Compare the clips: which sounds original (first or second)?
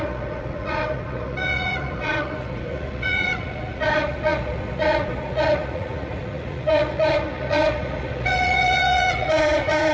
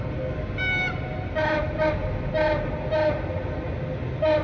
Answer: second